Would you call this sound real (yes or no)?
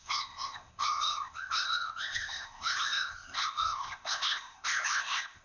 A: no